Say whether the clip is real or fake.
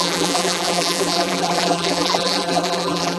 fake